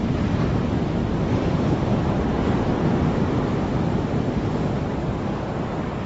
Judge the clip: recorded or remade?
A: recorded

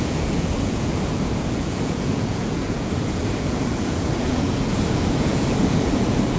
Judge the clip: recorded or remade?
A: remade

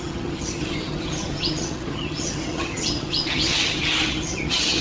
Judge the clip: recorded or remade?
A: remade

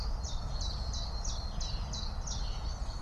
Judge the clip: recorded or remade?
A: recorded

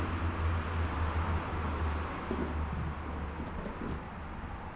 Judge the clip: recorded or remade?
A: recorded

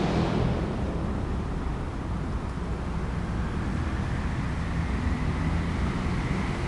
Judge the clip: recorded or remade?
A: recorded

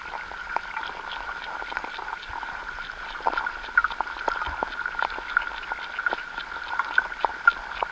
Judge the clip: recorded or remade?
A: recorded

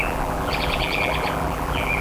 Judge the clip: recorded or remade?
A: remade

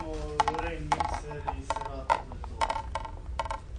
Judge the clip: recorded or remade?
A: recorded